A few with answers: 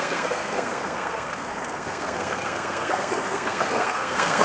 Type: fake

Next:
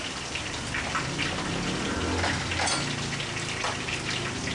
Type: real